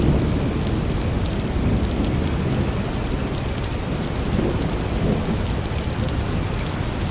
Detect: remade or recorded recorded